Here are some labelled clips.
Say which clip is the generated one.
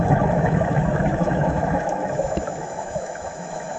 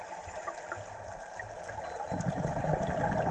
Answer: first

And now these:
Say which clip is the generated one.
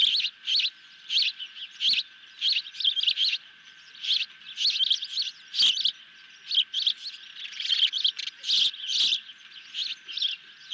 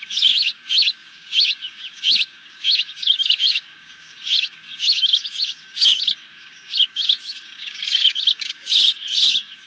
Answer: second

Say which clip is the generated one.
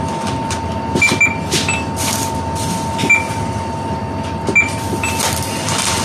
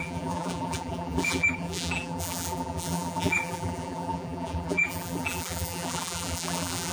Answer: second